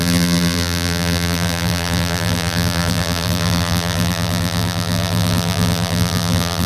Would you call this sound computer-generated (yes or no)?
yes